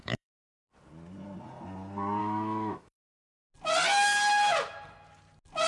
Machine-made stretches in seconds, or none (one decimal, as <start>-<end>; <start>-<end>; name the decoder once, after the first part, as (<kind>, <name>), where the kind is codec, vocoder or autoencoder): 0.0-0.6 (autoencoder, DAC-VAE); 2.2-3.0